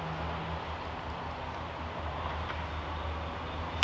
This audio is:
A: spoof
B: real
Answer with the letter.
B